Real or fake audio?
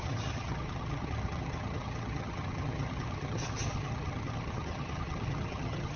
fake